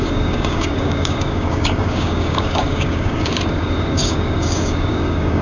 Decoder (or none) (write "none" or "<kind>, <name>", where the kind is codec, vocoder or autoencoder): codec, DAC